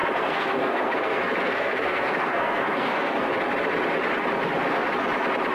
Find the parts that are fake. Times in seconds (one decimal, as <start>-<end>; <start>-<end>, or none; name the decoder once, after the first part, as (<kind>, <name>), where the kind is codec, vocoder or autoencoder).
0.0-3.3 (codec, SNAC)